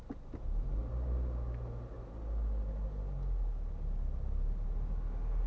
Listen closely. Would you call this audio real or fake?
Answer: real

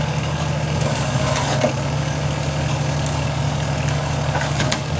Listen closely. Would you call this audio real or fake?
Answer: fake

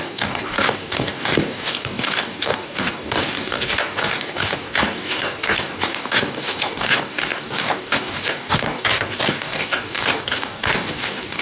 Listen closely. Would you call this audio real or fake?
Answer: fake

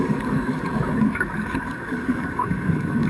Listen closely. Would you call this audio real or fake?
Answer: fake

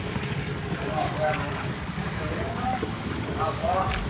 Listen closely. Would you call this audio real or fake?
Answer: fake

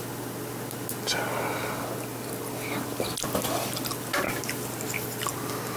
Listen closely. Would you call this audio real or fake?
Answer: real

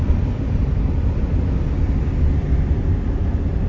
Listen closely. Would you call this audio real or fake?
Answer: real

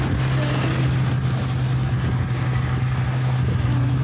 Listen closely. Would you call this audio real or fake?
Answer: real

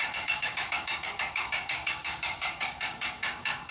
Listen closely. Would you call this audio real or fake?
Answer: fake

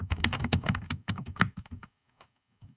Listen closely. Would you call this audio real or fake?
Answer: fake